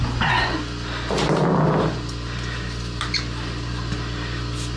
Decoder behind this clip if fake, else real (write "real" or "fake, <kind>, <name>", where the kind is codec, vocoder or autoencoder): real